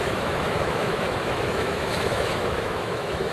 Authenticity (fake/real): fake